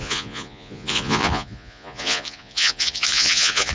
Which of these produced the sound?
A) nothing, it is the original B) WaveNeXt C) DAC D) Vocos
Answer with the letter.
D